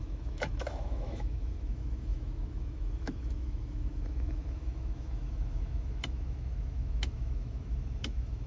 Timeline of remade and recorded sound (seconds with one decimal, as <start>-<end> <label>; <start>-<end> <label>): 0.0-8.5 remade